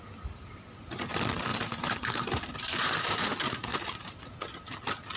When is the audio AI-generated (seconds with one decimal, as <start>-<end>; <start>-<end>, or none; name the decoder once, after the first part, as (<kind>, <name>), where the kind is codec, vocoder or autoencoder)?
1.5-3.2 (vocoder, BigVGAN v2); 3.7-4.2